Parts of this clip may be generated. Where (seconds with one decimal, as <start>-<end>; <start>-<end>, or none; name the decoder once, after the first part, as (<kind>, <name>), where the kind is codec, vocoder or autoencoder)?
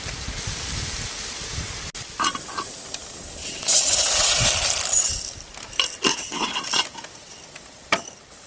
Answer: 3.4-4.5 (vocoder, WaveNeXt); 6.1-6.6